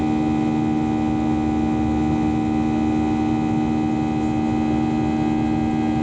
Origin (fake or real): real